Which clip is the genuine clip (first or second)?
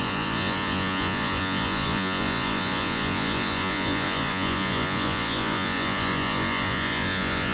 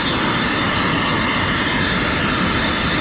second